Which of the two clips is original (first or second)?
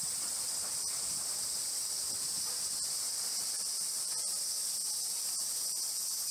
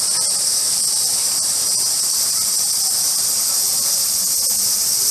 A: first